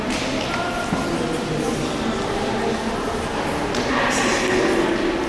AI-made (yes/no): no